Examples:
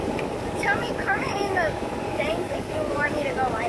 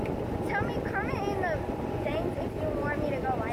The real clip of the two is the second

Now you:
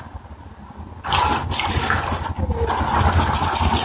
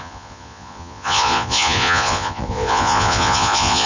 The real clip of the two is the first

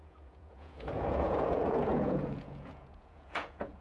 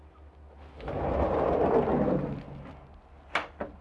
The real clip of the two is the second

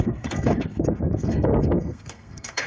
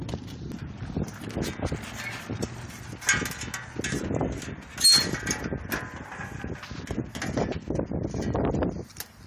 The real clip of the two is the second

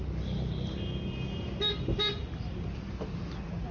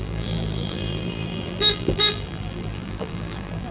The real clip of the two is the first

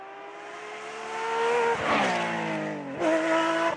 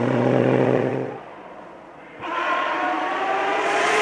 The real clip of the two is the first